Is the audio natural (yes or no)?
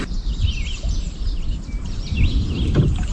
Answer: yes